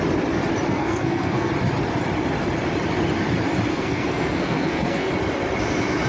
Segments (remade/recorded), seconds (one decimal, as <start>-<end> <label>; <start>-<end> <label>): 0.0-0.7 recorded; 0.7-1.5 remade; 1.5-3.7 recorded; 3.7-5.1 remade; 5.1-6.1 recorded